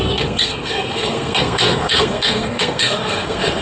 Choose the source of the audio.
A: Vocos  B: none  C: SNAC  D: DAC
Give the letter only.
C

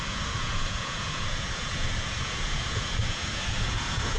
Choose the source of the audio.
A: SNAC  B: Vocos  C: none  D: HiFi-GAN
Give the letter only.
B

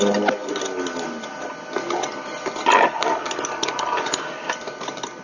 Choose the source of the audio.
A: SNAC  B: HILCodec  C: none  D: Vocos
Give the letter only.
C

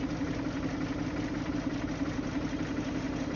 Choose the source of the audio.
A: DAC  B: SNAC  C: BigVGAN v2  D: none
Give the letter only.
D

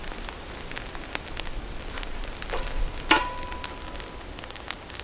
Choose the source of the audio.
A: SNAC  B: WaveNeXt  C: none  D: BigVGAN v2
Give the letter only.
C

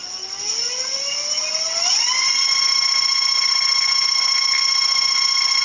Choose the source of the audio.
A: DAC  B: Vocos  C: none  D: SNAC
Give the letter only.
C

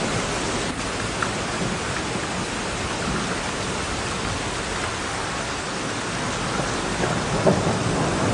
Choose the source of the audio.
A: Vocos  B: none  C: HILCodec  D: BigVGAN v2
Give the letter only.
B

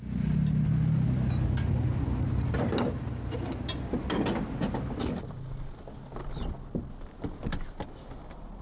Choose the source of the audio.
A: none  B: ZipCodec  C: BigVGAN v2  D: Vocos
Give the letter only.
A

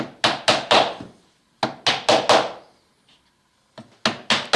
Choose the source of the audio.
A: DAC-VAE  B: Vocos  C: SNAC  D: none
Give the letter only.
D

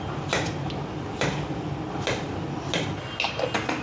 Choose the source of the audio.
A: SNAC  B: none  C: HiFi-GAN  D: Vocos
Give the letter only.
B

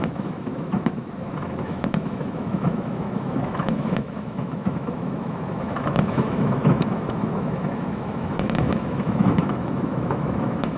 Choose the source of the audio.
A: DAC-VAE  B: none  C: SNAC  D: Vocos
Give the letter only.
A